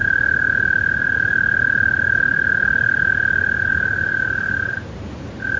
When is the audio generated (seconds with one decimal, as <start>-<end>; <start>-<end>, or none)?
0.0-1.0; 2.3-3.1; 3.7-4.7